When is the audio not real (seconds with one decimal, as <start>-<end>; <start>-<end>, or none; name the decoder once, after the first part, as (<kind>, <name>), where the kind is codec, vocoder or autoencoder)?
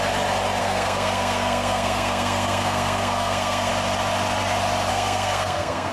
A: 0.6-3.7 (codec, SNAC); 4.9-5.9